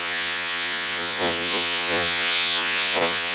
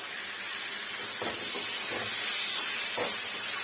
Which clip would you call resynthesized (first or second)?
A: first